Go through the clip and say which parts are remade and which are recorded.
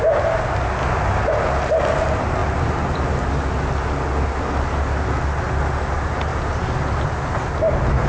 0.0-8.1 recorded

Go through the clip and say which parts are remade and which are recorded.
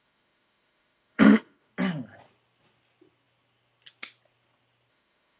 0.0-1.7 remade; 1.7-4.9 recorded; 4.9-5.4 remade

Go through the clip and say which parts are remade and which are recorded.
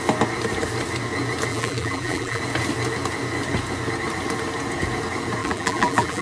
0.0-1.5 recorded; 1.5-2.4 remade; 2.4-5.4 recorded; 5.4-6.2 remade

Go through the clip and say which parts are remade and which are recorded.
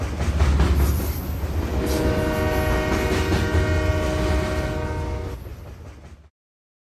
0.0-6.9 recorded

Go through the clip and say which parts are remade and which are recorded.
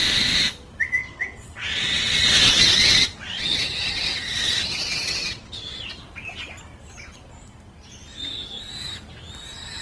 0.0-1.0 recorded; 1.0-6.0 remade; 6.0-9.8 recorded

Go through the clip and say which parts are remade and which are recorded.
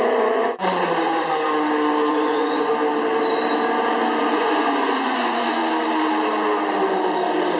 0.0-1.3 remade; 1.3-2.1 recorded; 2.1-2.7 remade; 2.7-4.2 recorded; 4.2-5.6 remade; 5.6-7.6 recorded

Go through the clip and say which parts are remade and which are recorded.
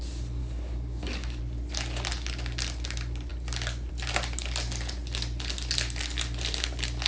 0.0-0.4 recorded; 0.4-1.4 remade; 1.4-7.1 recorded